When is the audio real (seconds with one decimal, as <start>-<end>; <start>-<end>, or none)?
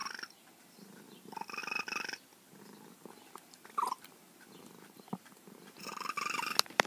1.6-2.6